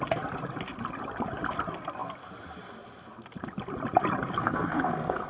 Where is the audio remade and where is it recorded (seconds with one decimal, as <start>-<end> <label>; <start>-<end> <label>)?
0.0-4.4 recorded; 4.4-5.3 remade